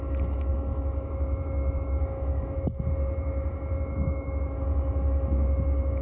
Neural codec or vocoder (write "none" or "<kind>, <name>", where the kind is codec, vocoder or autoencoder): autoencoder, DAC-VAE